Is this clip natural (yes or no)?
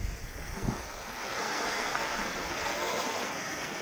no